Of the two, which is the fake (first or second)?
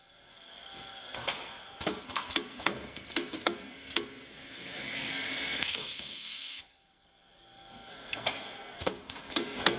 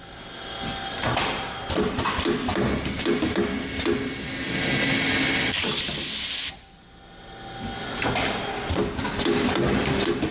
first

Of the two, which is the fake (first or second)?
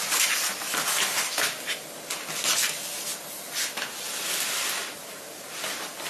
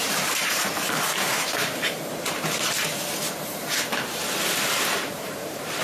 second